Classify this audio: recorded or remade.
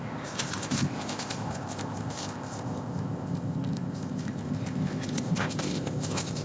remade